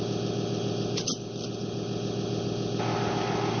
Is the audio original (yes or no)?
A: yes